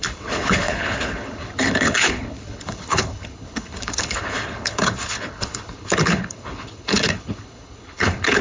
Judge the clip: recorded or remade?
remade